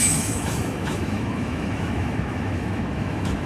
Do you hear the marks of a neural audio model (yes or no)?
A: yes